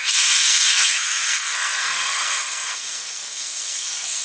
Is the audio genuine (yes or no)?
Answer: no